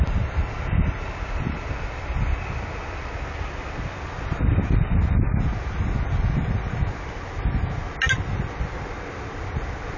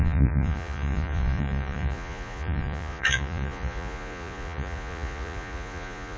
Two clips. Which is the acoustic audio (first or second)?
first